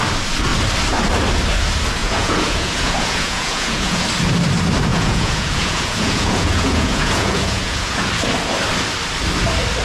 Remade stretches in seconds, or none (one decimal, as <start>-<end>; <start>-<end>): 2.0-4.0; 4.9-8.1